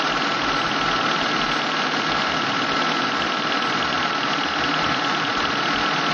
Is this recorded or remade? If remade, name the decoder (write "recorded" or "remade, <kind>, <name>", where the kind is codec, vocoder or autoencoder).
recorded